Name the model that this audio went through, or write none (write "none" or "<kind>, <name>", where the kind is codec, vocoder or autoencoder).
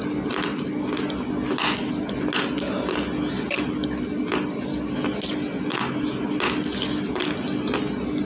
none